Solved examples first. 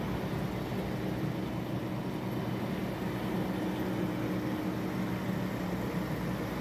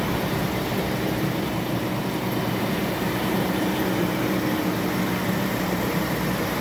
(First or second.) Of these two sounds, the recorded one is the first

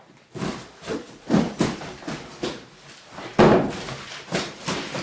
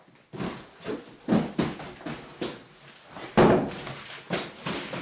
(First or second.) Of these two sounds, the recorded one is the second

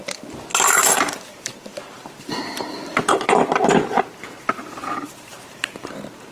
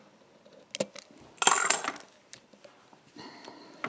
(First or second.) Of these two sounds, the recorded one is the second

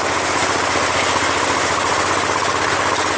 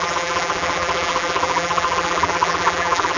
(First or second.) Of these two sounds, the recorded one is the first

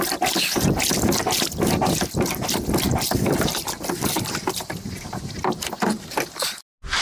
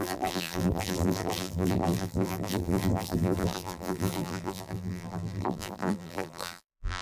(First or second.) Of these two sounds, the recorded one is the first